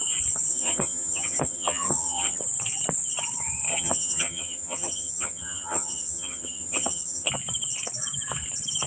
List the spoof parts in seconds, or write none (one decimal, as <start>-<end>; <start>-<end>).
0.5-2.4; 3.7-7.3